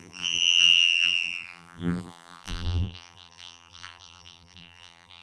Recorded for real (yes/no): no